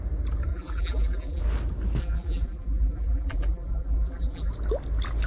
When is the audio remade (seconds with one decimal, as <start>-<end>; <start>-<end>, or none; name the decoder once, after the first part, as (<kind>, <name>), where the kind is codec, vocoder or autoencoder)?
0.5-1.4 (vocoder, BigVGAN v2); 2.0-4.5